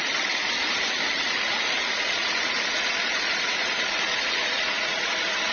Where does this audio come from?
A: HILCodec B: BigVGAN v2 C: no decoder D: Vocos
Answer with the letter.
D